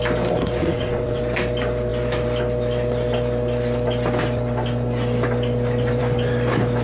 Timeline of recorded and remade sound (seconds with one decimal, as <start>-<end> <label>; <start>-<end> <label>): 0.0-0.6 recorded; 0.6-1.2 remade; 1.2-6.8 recorded